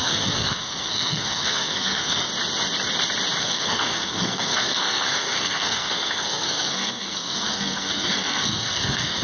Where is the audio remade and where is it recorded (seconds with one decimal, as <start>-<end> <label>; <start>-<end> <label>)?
0.0-2.3 remade; 2.3-3.4 recorded; 3.4-9.2 remade